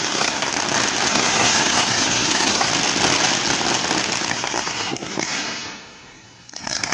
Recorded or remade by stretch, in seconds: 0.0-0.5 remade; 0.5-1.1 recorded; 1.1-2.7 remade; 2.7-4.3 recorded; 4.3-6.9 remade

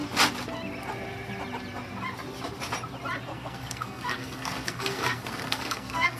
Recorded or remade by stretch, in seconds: 0.0-3.3 recorded; 3.3-6.2 remade